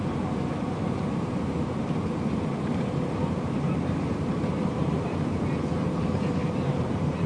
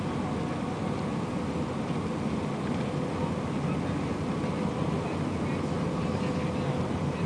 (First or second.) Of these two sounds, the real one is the second